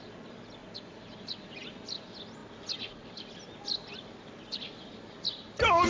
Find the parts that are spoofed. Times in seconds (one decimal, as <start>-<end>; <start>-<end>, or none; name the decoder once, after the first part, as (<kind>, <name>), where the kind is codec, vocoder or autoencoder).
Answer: 0.6-2.0 (vocoder, BigVGAN v2)